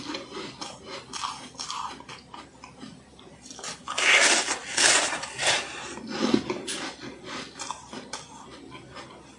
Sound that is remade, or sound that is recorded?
recorded